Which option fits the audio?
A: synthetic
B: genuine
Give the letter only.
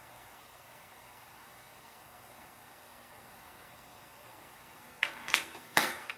A